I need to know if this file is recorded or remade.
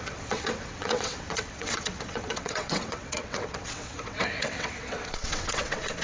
remade